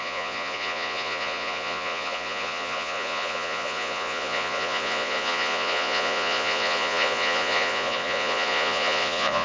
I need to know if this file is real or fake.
fake